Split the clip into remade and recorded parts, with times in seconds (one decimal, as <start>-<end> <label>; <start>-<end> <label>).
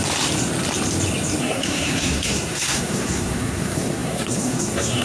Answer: 0.0-1.4 recorded; 1.4-5.0 remade